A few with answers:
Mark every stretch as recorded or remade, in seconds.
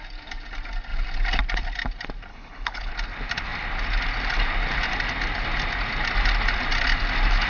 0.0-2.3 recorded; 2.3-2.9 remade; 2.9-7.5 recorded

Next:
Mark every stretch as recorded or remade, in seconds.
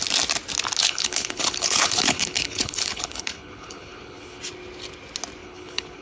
0.0-0.8 recorded; 0.8-4.4 remade; 4.4-5.4 recorded; 5.4-6.0 remade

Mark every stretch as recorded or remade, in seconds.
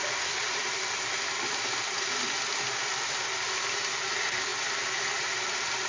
0.0-5.9 recorded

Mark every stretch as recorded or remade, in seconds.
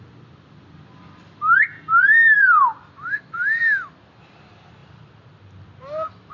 0.0-6.3 recorded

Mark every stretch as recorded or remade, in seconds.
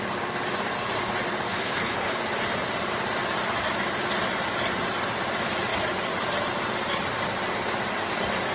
0.0-1.5 recorded; 1.5-2.2 remade; 2.2-8.5 recorded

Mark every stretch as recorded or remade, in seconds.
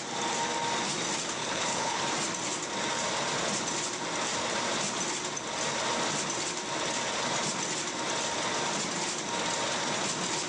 0.0-1.4 recorded; 1.4-2.0 remade; 2.0-10.5 recorded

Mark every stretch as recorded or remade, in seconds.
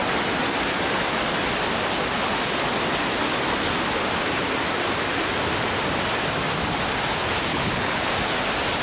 0.0-7.5 recorded; 7.5-8.1 remade; 8.1-8.8 recorded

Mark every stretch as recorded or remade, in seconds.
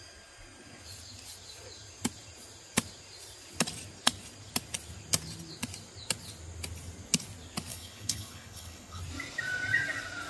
0.0-7.7 recorded; 7.7-9.0 remade; 9.0-10.3 recorded